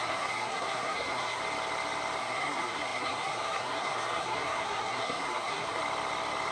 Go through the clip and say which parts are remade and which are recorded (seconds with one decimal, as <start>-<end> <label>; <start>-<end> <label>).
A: 0.0-1.4 remade; 1.4-2.2 recorded; 2.2-5.8 remade; 5.8-6.5 recorded